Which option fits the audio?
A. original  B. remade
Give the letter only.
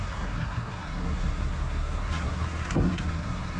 B